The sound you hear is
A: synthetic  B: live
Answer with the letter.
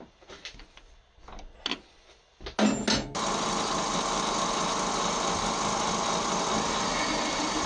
B